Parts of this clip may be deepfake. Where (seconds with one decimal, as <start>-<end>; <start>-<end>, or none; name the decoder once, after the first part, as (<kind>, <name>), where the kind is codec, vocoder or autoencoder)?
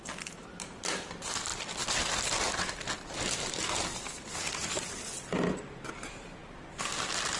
none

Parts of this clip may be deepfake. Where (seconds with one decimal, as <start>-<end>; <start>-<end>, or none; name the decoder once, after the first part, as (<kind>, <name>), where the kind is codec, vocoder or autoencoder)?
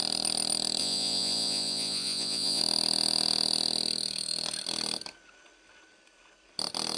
0.8-2.6 (vocoder, Vocos)